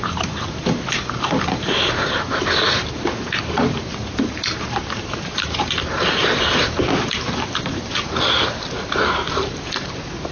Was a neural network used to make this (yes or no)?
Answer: yes